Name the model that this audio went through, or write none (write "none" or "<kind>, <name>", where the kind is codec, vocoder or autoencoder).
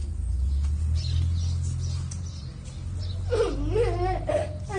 none